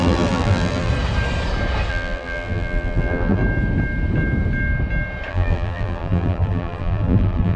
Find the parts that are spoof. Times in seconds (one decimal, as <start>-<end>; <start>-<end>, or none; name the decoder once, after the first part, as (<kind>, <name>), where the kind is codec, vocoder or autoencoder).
0.0-0.9 (vocoder, BigVGAN v2); 1.9-3.4; 5.3-7.6